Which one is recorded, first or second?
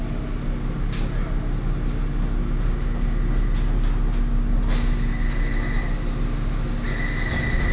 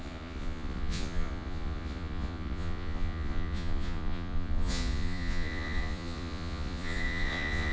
first